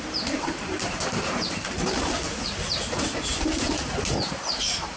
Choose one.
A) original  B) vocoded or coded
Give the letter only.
B